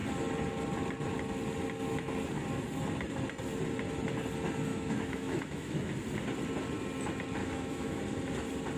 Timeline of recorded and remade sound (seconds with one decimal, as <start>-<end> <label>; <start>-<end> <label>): 0.0-4.7 recorded; 4.7-5.9 remade; 5.9-7.4 recorded; 7.4-8.0 remade; 8.0-8.8 recorded